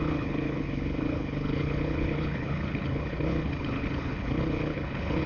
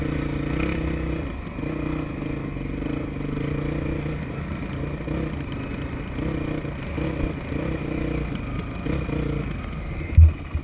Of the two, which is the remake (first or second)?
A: first